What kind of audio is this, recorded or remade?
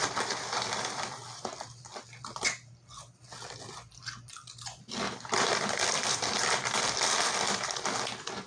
recorded